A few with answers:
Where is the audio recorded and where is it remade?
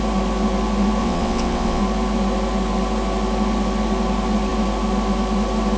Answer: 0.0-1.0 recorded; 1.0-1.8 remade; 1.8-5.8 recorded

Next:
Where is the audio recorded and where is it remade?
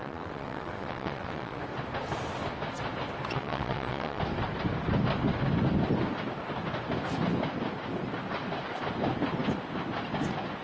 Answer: 0.0-1.6 remade; 1.6-3.3 recorded; 3.3-4.2 remade; 4.2-10.6 recorded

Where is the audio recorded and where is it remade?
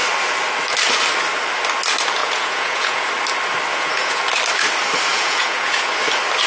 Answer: 0.0-2.2 recorded; 2.2-3.1 remade; 3.1-3.7 recorded; 3.7-4.2 remade; 4.2-5.1 recorded; 5.1-5.9 remade; 5.9-6.5 recorded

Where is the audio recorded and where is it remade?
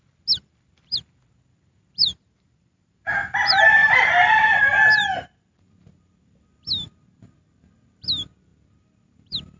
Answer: 0.0-2.1 recorded; 2.1-3.1 remade; 3.1-3.8 recorded; 3.8-4.6 remade; 4.6-9.6 recorded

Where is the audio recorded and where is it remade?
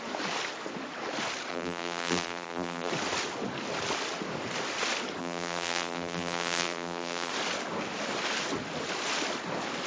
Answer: 0.0-1.5 recorded; 1.5-2.9 remade; 2.9-5.2 recorded; 5.2-7.3 remade; 7.3-9.9 recorded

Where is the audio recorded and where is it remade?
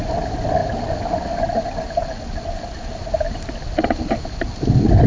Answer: 0.0-5.1 recorded